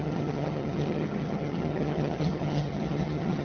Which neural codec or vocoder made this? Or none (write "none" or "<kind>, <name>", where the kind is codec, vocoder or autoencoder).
vocoder, HiFi-GAN